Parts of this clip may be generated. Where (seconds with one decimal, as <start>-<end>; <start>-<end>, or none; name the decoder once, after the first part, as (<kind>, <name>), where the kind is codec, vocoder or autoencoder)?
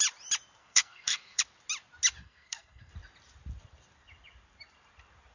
0.6-1.4 (codec, SNAC); 2.2-2.9